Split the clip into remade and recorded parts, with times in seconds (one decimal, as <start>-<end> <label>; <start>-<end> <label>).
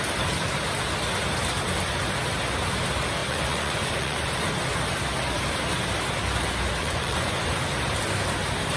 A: 0.0-3.2 recorded; 3.2-4.4 remade; 4.4-6.8 recorded; 6.8-7.5 remade; 7.5-8.8 recorded